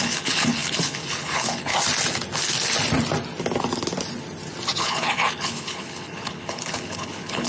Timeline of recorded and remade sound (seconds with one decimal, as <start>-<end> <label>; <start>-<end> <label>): 0.0-1.7 remade; 1.7-4.8 recorded; 4.8-7.5 remade